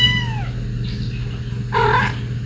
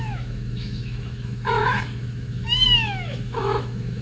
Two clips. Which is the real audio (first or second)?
first